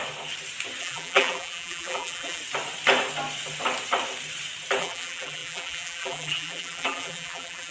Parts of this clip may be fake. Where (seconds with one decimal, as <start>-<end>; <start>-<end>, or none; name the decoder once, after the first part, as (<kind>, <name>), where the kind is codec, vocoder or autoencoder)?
0.8-2.4 (vocoder, BigVGAN v2); 4.8-7.7